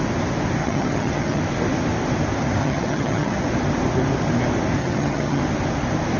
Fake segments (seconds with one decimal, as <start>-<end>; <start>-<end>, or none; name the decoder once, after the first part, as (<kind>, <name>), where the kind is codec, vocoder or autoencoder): 0.6-1.4 (vocoder, HiFi-GAN); 2.6-3.4; 4.8-5.4